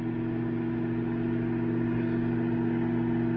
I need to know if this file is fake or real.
real